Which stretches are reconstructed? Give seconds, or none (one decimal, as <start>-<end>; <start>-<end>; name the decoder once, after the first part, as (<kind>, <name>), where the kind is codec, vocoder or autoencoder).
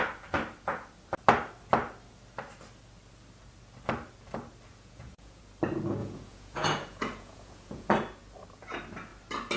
4.7-5.4 (vocoder, Vocos); 6.0-7.9